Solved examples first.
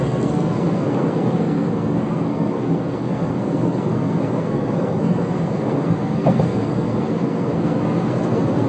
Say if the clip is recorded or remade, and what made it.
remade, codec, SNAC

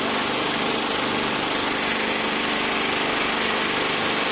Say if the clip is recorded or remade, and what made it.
recorded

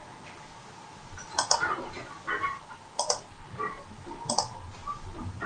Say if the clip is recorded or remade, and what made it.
recorded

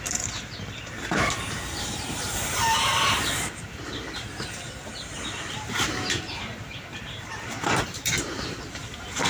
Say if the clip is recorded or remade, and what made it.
remade, vocoder, BigVGAN v2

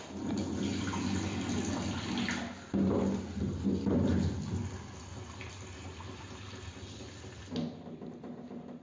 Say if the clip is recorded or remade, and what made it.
recorded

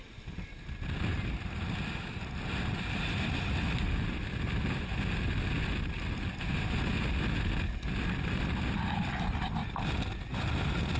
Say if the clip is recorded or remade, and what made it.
recorded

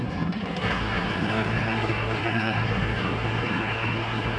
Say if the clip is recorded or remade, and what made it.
remade, codec, SNAC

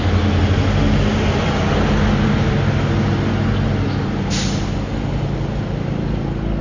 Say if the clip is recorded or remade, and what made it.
recorded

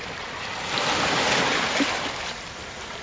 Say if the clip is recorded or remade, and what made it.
recorded